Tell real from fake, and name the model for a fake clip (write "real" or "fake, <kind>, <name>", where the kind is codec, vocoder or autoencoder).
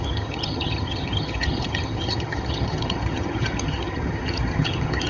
fake, vocoder, HiFi-GAN